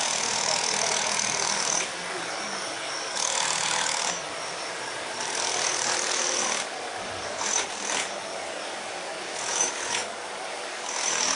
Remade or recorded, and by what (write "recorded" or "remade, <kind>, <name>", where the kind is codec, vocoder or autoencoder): remade, codec, DAC